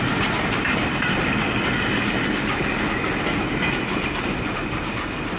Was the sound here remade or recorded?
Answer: recorded